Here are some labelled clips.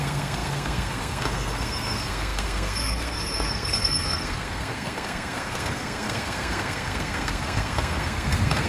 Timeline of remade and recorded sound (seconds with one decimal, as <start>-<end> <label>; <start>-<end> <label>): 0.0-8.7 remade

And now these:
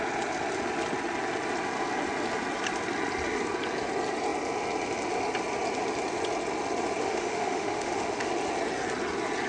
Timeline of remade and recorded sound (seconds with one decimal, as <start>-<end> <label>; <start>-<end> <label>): 0.0-7.0 recorded; 7.0-8.3 remade; 8.3-9.5 recorded

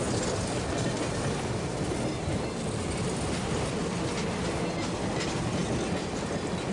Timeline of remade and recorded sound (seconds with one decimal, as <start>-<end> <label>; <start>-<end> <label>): 0.0-6.7 recorded

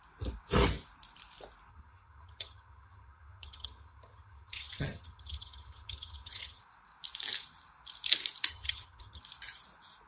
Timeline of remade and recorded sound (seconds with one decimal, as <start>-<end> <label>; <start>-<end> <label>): 0.0-1.7 recorded; 1.7-6.6 remade; 6.6-8.5 recorded; 8.5-9.2 remade; 9.2-10.1 recorded

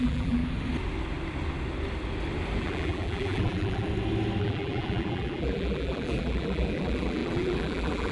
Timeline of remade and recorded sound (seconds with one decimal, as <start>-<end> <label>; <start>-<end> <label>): 0.0-0.4 remade; 0.4-2.6 recorded; 2.6-3.9 remade; 3.9-4.4 recorded; 4.4-8.1 remade